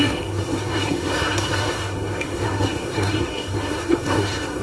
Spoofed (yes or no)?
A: yes